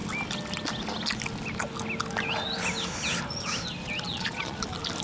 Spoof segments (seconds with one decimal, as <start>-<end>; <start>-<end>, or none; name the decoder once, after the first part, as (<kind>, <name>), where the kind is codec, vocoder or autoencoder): 4.1-4.6 (vocoder, Vocos)